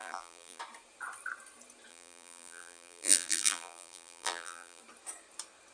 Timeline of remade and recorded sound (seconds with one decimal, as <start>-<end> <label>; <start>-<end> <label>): 0.0-0.6 remade; 0.6-1.9 recorded; 1.9-4.8 remade; 4.8-5.7 recorded

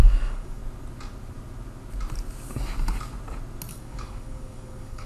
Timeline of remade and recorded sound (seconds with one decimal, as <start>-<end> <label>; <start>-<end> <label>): 0.0-0.6 remade; 0.6-3.7 recorded; 3.7-5.1 remade

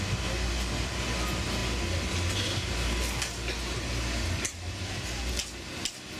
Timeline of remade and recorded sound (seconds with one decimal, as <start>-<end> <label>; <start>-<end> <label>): 0.0-6.2 recorded

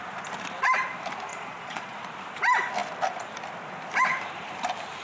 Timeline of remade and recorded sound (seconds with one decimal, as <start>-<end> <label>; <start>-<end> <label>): 0.0-1.3 recorded; 1.3-2.0 remade; 2.0-5.0 recorded

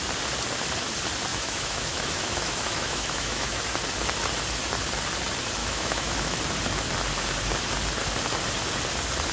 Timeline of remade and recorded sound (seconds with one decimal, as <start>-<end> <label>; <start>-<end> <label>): 0.0-1.3 recorded; 1.3-3.7 remade; 3.7-5.6 recorded; 5.6-6.4 remade; 6.4-9.3 recorded